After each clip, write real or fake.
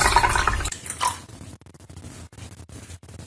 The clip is real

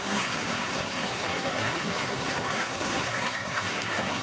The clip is fake